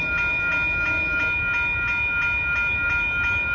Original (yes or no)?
yes